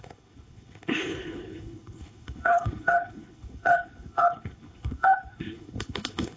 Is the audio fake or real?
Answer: fake